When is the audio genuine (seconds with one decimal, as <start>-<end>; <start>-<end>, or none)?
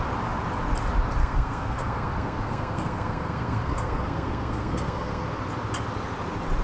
0.0-1.2; 5.2-6.6